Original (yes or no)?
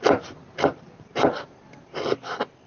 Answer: yes